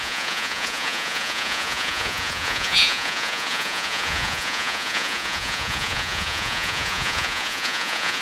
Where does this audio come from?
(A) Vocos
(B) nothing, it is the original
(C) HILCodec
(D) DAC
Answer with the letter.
A